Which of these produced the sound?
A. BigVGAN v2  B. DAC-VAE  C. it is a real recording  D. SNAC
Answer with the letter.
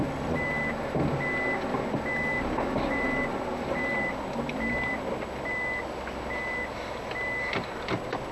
C